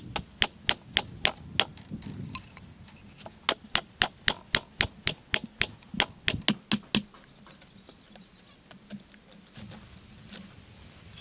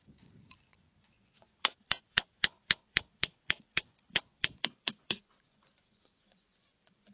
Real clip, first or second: first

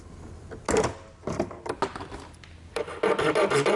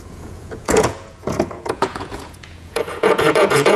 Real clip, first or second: first